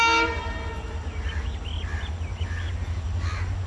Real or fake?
real